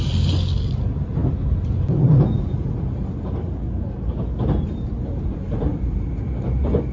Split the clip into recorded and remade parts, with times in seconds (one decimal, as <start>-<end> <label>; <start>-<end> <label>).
0.0-6.9 recorded